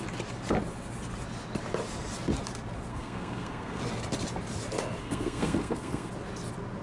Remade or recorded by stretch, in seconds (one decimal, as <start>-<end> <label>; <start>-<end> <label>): 0.0-2.9 recorded; 2.9-3.8 remade; 3.8-5.0 recorded; 5.0-6.1 remade; 6.1-6.8 recorded

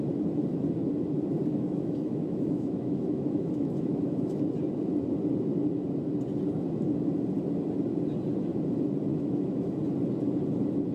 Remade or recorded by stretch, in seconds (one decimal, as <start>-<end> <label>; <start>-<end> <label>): 0.0-1.5 recorded; 1.5-4.4 remade; 4.4-9.1 recorded; 9.1-9.8 remade; 9.8-10.9 recorded

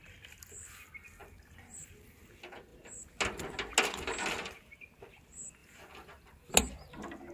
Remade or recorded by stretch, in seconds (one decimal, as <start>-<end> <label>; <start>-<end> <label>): 0.0-1.2 recorded; 1.2-1.9 remade; 1.9-5.6 recorded; 5.6-6.5 remade; 6.5-7.3 recorded

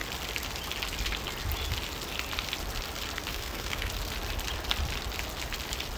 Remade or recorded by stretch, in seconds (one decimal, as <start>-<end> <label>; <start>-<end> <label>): 0.0-3.3 recorded; 3.3-3.9 remade; 3.9-6.0 recorded

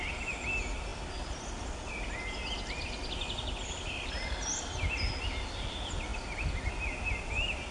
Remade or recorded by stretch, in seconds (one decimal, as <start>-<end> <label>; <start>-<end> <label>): 0.0-7.7 recorded

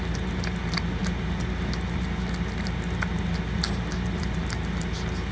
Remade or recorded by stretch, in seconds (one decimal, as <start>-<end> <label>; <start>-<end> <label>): 0.0-5.3 recorded

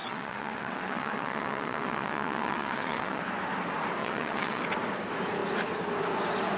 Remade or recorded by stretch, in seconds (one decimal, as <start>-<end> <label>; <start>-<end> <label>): 0.0-3.2 remade; 3.2-4.0 recorded; 4.0-4.6 remade; 4.6-6.6 recorded